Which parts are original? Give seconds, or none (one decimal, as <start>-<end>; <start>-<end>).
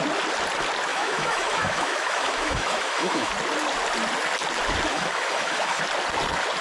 0.0-0.9; 3.3-4.9; 5.8-6.6